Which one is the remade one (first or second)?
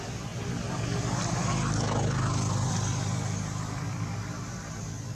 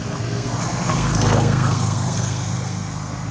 second